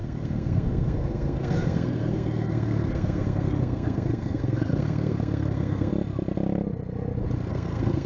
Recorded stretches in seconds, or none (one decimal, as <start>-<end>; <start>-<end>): 5.9-7.5